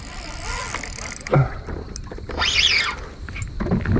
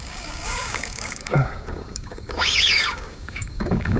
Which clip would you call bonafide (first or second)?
first